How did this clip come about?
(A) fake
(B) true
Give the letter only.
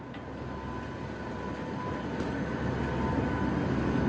B